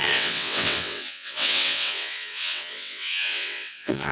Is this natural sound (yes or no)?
no